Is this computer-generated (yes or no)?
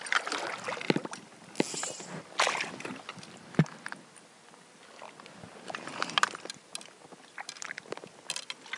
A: no